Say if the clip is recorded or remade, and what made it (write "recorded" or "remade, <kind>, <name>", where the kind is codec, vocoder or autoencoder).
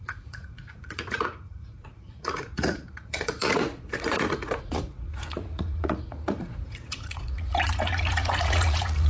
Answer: remade, vocoder, Vocos